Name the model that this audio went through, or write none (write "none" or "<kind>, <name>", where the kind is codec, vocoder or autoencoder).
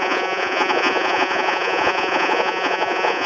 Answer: vocoder, Vocos